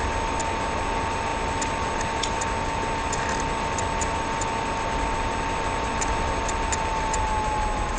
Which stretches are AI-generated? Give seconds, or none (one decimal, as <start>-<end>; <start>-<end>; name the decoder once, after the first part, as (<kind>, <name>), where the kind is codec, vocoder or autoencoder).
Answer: none